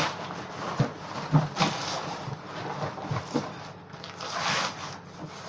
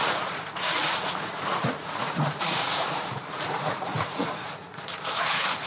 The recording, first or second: first